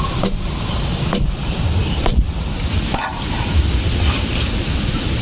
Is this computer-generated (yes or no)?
no